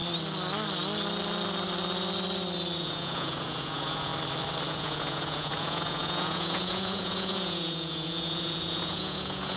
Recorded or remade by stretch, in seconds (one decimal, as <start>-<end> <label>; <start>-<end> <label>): 0.0-2.8 recorded; 2.8-4.1 remade; 4.1-4.7 recorded; 4.7-9.6 remade